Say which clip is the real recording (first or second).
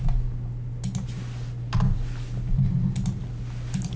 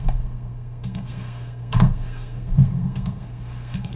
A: first